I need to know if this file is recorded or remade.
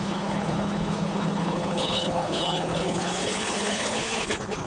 remade